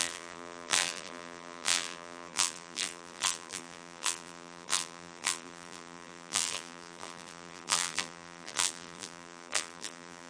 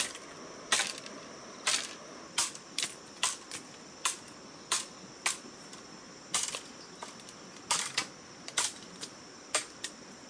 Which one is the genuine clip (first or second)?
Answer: second